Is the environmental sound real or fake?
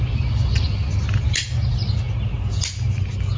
real